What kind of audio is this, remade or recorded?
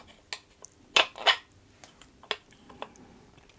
recorded